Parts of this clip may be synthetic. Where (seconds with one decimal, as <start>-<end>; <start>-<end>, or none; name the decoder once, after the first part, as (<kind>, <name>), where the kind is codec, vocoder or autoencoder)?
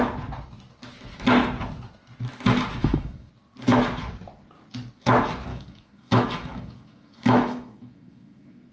2.8-3.3 (autoencoder, DAC-VAE); 5.5-8.7